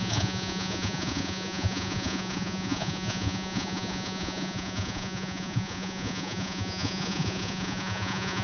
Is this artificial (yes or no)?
yes